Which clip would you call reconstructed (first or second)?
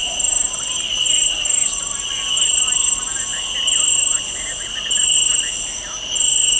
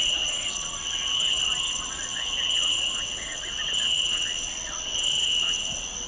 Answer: second